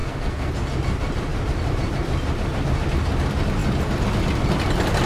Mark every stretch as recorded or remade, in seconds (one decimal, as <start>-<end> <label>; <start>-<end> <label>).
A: 0.0-0.5 remade; 0.5-5.1 recorded